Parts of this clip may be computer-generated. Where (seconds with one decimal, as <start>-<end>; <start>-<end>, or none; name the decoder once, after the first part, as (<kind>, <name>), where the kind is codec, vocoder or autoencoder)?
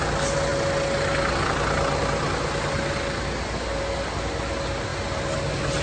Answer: none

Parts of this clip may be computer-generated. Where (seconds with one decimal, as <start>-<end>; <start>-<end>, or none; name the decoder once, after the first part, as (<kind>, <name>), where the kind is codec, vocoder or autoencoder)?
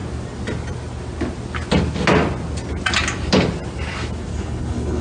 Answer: 4.3-5.0 (codec, HILCodec)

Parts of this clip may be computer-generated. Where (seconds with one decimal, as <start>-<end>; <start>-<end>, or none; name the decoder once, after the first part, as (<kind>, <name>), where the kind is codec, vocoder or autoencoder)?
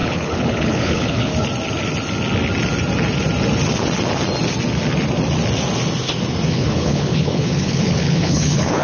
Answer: 0.0-1.3 (codec, HILCodec); 6.5-8.8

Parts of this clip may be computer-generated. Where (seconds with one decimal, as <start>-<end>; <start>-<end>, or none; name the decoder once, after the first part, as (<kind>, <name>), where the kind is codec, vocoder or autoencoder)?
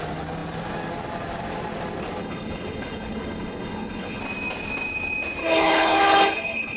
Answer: 2.2-4.2 (codec, HILCodec); 5.4-6.8